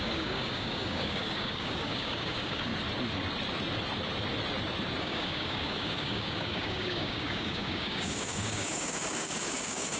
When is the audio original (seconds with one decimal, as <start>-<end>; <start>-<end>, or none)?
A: 2.7-5.0